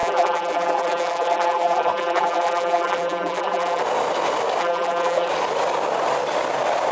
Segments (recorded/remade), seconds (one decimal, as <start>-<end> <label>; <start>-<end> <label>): 0.0-3.8 remade; 3.8-4.6 recorded; 4.6-5.3 remade; 5.3-6.9 recorded